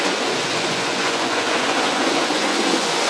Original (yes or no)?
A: no